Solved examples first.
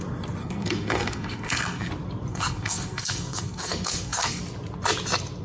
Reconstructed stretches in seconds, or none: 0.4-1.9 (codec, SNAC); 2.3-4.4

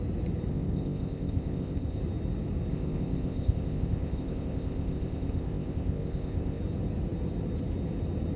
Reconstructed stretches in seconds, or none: 0.5-2.0 (codec, ZipCodec); 2.7-6.6

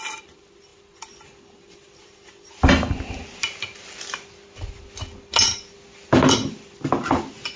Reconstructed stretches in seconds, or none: none